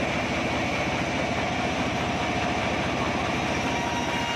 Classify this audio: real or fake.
real